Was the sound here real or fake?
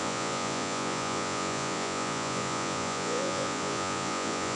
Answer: fake